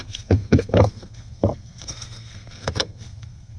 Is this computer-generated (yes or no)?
yes